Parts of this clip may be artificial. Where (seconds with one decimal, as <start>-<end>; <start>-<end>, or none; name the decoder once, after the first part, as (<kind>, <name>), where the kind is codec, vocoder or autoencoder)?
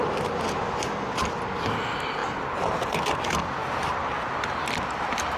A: none